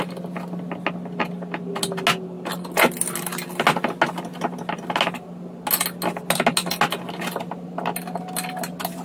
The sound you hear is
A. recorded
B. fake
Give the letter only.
A